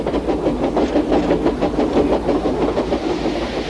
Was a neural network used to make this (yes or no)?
no